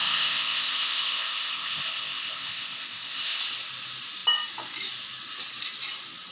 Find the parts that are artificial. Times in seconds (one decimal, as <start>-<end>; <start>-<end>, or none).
0.0-3.4